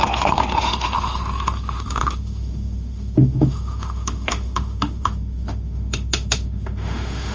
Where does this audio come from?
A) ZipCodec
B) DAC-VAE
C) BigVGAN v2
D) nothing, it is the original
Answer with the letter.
B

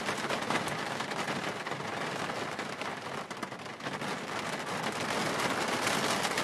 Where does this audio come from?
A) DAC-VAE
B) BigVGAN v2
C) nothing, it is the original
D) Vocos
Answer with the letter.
C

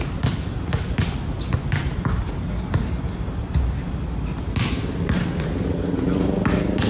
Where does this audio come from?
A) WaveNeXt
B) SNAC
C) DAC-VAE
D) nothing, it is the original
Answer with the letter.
D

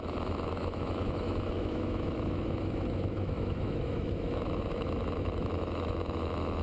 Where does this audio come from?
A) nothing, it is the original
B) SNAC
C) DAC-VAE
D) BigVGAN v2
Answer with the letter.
C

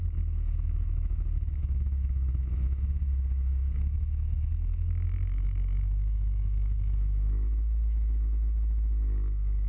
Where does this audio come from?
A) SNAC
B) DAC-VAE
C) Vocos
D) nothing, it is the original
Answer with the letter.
B